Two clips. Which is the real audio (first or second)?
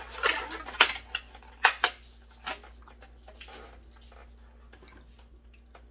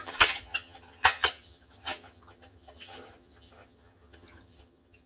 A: first